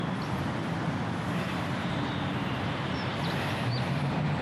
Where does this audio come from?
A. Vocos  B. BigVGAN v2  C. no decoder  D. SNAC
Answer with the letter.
B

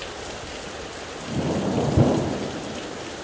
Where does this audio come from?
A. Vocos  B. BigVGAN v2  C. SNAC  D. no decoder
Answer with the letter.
D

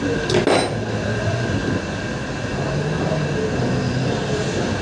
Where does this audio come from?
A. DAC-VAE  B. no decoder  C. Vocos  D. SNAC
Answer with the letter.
B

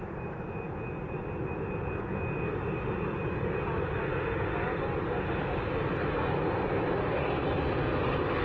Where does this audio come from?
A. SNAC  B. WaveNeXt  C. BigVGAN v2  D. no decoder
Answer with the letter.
D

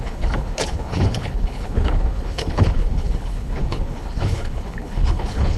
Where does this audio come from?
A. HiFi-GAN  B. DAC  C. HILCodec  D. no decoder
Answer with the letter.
C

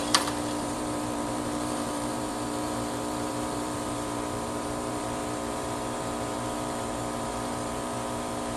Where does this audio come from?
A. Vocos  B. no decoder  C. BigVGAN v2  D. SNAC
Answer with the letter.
C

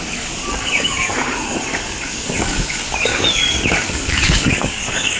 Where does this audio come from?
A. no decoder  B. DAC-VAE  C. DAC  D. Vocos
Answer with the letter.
C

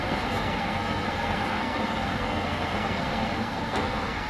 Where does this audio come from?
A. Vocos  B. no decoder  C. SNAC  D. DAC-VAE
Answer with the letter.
C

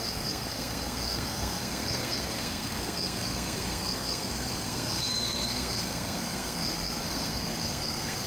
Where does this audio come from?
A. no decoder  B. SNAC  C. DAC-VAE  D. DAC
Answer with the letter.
B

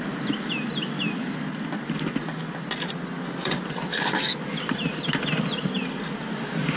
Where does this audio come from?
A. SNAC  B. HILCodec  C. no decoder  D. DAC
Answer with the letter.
C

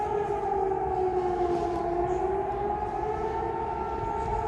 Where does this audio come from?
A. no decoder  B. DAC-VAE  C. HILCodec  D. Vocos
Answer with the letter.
A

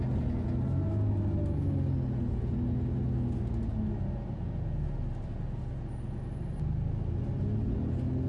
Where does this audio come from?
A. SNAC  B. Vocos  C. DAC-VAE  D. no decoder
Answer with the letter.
D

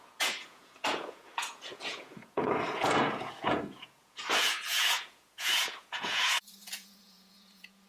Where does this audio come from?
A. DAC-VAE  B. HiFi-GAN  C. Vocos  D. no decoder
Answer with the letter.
C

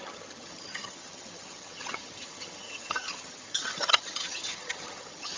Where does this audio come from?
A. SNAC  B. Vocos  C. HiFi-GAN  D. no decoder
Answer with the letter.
C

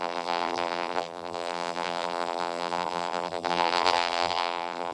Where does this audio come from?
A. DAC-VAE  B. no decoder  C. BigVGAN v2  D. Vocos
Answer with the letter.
C